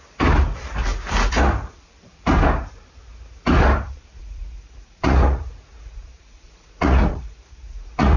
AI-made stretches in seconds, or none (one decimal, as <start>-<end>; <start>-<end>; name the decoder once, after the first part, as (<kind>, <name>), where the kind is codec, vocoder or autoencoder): 4.2-8.2 (vocoder, Vocos)